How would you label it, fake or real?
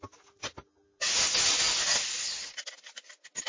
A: real